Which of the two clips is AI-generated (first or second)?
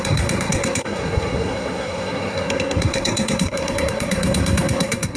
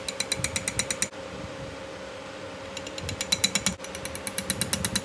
first